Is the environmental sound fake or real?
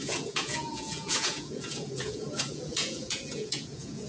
fake